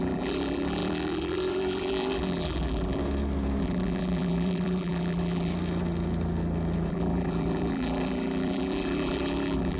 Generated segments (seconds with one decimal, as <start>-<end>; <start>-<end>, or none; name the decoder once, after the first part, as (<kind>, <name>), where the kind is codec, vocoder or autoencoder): 0.0-3.0 (vocoder, BigVGAN v2); 3.6-5.5; 6.9-9.8